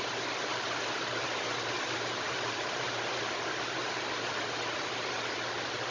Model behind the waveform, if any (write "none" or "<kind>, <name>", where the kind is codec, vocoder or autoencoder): none